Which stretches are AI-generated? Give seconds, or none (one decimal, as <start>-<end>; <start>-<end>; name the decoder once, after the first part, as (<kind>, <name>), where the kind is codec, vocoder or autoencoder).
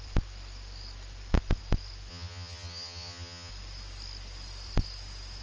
2.1-3.5 (vocoder, HiFi-GAN)